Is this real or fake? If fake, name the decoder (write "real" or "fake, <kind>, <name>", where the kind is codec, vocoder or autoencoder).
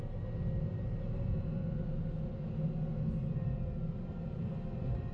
real